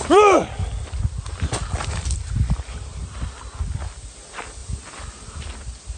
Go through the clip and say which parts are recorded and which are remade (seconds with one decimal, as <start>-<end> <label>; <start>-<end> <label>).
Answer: 0.0-6.0 recorded